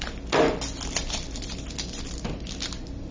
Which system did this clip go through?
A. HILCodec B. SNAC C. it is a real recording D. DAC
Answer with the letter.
C